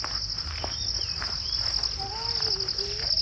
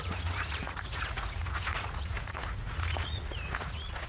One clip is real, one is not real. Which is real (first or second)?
first